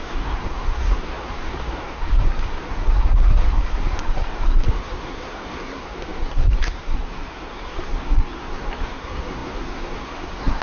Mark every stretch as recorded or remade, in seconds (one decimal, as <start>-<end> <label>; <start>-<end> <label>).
0.0-10.6 remade